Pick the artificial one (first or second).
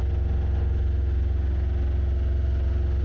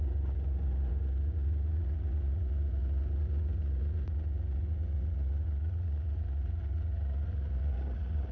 second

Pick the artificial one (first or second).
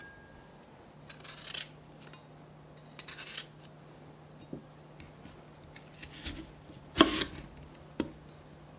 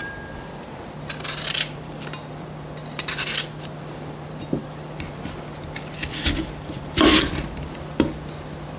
second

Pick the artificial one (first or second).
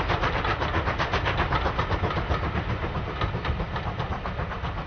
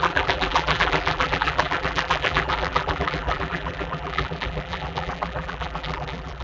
second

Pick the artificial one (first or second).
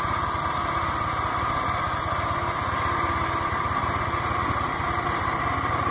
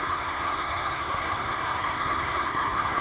second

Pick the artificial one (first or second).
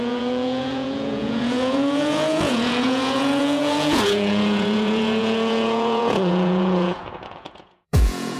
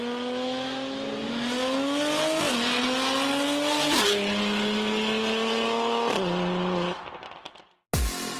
first